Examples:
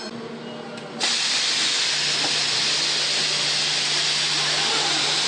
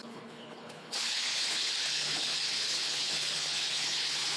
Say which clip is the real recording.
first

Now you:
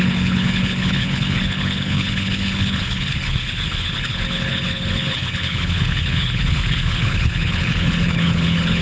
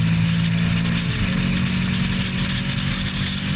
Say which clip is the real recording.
second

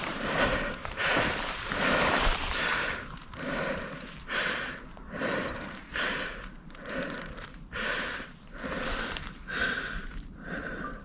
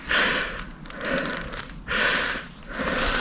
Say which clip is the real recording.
second